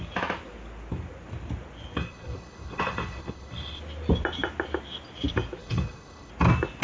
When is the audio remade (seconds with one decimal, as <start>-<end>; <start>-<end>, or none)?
2.0-3.8; 5.6-6.3